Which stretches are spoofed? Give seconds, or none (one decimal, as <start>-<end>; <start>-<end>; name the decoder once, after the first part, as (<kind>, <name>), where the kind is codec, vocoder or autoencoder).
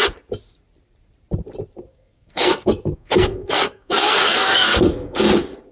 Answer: 1.9-5.3 (codec, SNAC)